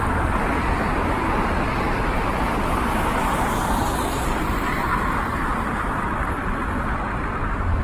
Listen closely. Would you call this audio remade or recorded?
remade